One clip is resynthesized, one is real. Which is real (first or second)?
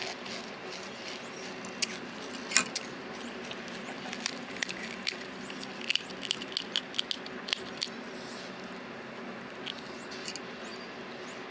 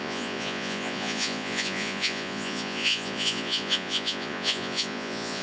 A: first